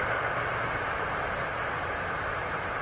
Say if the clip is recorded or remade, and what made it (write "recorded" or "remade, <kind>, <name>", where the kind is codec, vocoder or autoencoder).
recorded